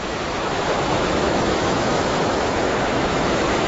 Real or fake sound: fake